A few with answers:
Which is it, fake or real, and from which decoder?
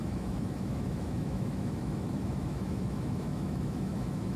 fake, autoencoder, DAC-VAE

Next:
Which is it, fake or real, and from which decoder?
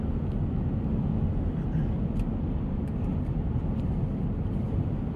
real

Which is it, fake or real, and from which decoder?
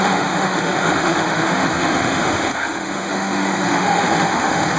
fake, autoencoder, DAC-VAE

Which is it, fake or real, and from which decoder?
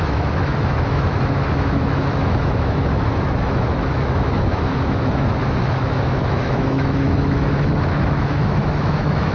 fake, autoencoder, DAC-VAE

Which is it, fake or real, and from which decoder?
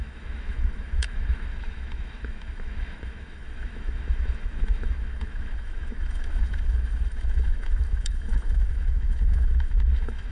fake, autoencoder, DAC-VAE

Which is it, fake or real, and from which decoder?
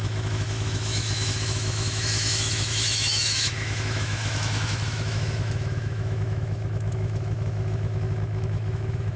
fake, autoencoder, DAC-VAE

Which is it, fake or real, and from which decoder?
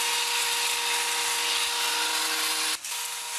real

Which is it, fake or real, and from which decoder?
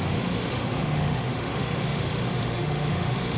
fake, autoencoder, DAC-VAE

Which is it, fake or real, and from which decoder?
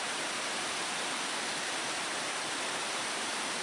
real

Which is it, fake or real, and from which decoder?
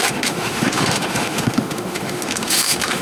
fake, autoencoder, DAC-VAE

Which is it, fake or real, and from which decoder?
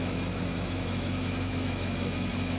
fake, autoencoder, DAC-VAE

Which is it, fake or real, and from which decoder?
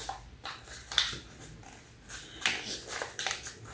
real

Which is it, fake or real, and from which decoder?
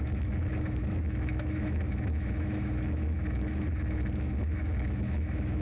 fake, autoencoder, DAC-VAE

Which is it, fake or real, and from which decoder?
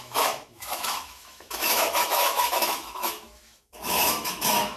fake, autoencoder, DAC-VAE